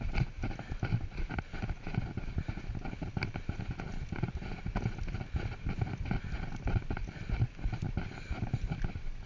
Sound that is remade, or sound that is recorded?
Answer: recorded